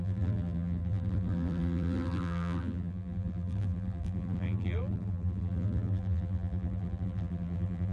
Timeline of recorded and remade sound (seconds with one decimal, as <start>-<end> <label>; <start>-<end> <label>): 0.0-7.9 remade